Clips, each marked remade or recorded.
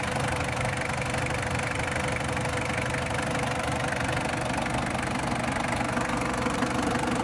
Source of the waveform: recorded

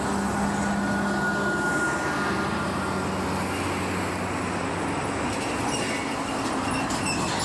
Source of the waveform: recorded